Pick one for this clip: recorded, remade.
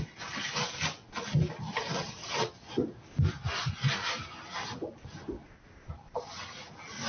recorded